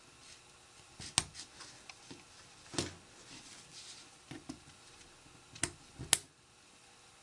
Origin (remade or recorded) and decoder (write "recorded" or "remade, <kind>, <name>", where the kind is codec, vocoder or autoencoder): recorded